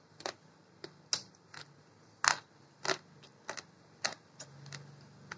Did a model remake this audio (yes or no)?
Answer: no